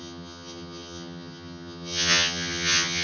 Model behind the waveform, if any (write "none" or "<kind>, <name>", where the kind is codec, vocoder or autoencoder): vocoder, HiFi-GAN